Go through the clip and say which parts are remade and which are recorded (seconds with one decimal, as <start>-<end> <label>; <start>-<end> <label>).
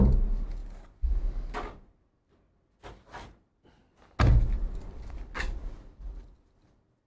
0.0-7.1 recorded